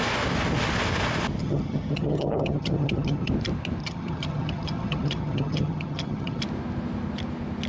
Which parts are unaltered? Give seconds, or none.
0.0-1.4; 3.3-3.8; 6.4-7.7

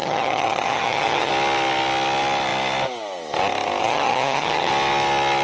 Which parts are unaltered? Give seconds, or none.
1.3-3.8; 4.7-5.4

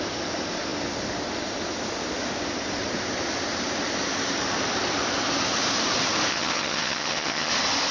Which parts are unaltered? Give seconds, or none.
0.0-6.3; 7.5-7.9